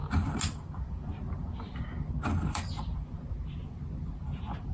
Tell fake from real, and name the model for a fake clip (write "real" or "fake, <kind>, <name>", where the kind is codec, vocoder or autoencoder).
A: real